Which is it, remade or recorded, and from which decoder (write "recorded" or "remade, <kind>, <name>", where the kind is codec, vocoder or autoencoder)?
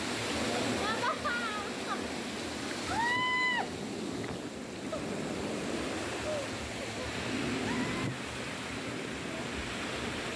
recorded